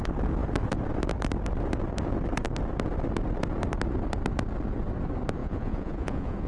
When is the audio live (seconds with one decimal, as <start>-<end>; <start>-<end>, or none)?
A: 0.0-5.4